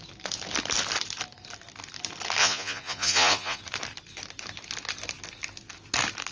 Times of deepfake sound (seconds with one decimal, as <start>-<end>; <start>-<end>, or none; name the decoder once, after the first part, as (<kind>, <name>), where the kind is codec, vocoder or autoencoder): 2.4-3.6 (vocoder, Vocos)